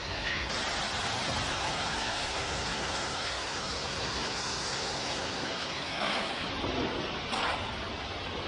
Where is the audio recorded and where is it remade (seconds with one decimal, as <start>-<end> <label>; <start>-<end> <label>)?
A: 0.0-0.5 remade; 0.5-1.5 recorded; 1.5-6.5 remade; 6.5-8.5 recorded